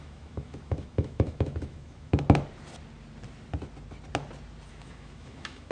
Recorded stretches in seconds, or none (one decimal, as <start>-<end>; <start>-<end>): 2.1-4.7